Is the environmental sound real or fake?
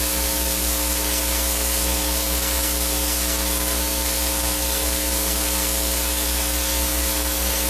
fake